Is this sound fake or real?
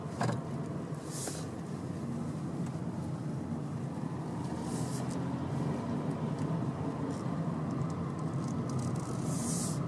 real